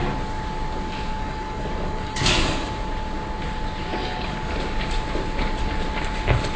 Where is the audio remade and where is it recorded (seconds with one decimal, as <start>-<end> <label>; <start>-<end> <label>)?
0.0-1.1 recorded; 1.1-2.7 remade; 2.7-3.9 recorded; 3.9-4.4 remade; 4.4-6.6 recorded